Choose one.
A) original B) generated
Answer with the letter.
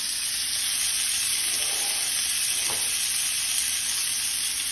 A